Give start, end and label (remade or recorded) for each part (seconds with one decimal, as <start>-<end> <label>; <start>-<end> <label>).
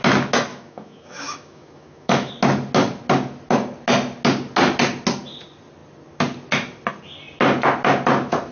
0.0-0.5 recorded; 0.5-2.3 remade; 2.3-8.5 recorded